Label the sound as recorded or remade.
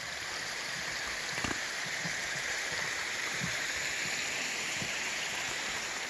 remade